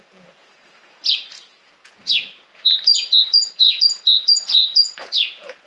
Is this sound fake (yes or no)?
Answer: yes